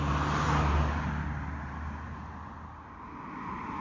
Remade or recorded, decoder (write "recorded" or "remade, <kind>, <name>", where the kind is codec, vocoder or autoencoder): recorded